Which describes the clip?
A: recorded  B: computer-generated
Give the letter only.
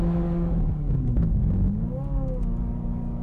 B